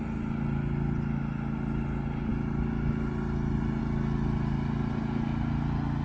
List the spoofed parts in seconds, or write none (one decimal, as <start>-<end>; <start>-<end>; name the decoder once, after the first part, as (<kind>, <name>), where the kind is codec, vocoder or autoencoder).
none